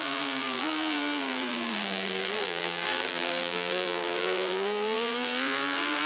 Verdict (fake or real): fake